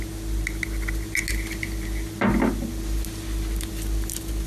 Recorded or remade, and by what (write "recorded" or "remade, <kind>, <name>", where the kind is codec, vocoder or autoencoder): recorded